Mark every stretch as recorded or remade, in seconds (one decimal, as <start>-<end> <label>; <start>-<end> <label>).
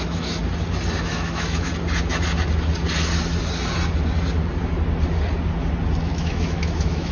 0.0-0.4 remade; 0.4-1.0 recorded; 1.0-1.7 remade; 1.7-6.0 recorded; 6.0-7.1 remade